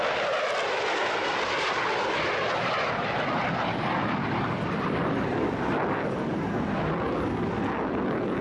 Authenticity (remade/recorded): recorded